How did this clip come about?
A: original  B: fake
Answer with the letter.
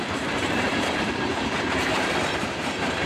B